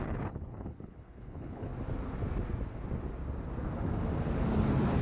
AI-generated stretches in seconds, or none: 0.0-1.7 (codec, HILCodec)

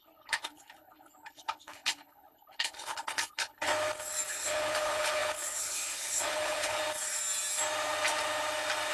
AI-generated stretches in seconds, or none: 0.0-3.7 (codec, HILCodec); 4.3-6.8

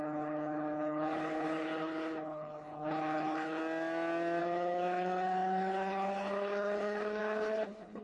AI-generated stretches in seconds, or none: 0.0-3.6 (codec, HILCodec); 4.4-8.0

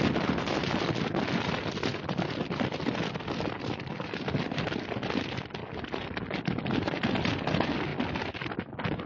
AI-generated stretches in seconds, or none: none